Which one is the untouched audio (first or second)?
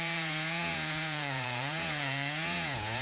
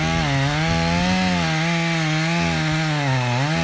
second